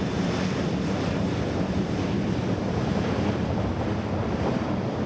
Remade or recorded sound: remade